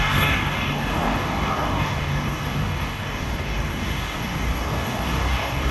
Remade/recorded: remade